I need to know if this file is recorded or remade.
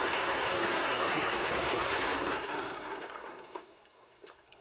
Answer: remade